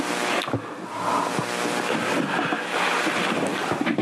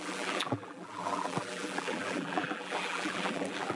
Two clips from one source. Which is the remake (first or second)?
second